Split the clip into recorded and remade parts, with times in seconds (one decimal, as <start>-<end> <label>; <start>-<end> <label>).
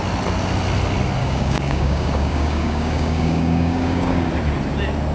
0.0-1.2 recorded; 1.2-4.3 remade; 4.3-5.1 recorded